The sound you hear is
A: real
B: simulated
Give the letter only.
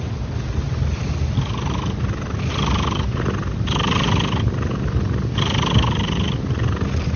A